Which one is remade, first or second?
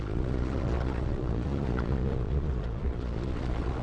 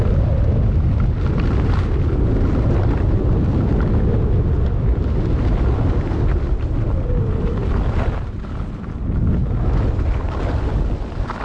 first